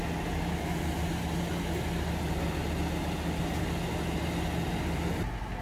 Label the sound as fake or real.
real